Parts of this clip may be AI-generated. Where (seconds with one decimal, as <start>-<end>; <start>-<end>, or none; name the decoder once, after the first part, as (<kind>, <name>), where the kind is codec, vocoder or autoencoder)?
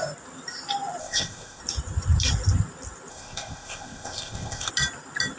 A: 1.0-1.6 (codec, ZipCodec); 3.1-4.7